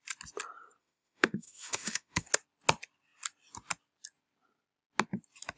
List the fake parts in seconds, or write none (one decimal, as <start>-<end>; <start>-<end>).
0.8-2.3